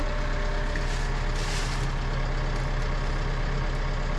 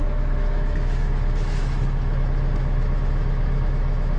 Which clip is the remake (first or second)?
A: second